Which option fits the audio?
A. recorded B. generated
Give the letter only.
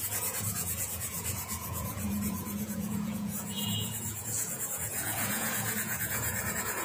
B